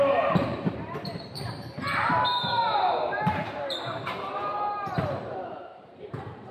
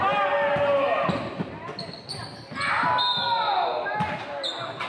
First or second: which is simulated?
first